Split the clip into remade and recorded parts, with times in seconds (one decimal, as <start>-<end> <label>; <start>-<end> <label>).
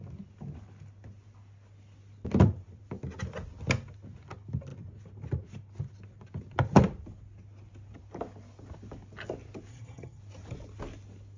0.0-9.7 recorded; 9.7-10.2 remade; 10.2-11.4 recorded